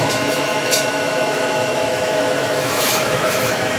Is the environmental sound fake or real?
fake